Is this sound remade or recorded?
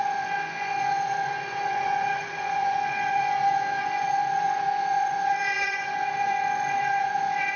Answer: remade